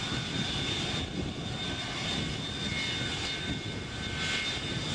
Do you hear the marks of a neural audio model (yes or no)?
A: no